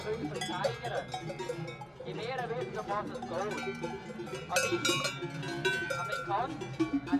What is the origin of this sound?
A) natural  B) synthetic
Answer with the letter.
A